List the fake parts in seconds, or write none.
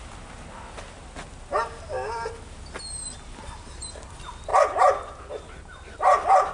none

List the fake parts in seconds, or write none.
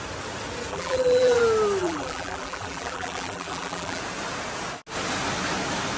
0.7-1.4 (vocoder, BigVGAN v2); 1.8-4.0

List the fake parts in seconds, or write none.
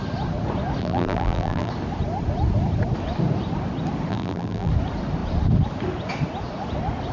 0.8-1.7 (vocoder, BigVGAN v2); 4.1-4.7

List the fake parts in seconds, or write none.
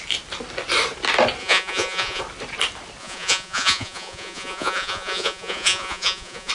1.4-2.2 (vocoder, Vocos); 3.0-6.5